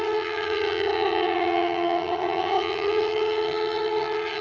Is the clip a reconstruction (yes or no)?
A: yes